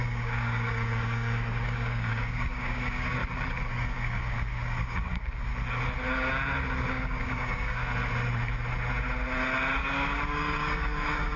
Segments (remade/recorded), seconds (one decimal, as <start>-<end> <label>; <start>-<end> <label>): 0.0-3.2 remade; 3.2-3.7 recorded; 3.7-5.5 remade; 5.5-6.9 recorded; 6.9-7.8 remade; 7.8-9.8 recorded; 9.8-11.4 remade